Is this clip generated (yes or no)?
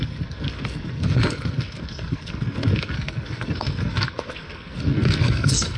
yes